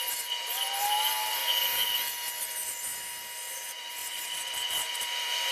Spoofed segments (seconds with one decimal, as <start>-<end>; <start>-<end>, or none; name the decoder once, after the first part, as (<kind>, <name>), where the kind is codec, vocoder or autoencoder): 0.0-1.4 (vocoder, BigVGAN v2); 2.4-2.9; 3.5-5.5